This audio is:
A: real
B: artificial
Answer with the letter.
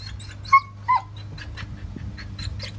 A